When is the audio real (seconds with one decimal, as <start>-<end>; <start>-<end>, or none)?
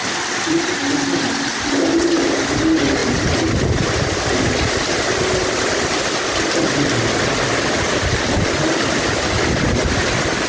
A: 0.0-10.5